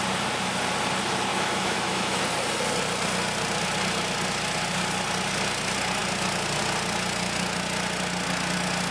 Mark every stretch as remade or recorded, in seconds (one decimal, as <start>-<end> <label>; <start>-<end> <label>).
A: 0.0-1.3 recorded; 1.3-2.2 remade; 2.2-8.9 recorded